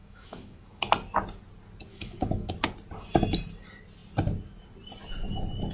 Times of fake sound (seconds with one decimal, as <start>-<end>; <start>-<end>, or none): 0.0-0.9; 1.9-2.5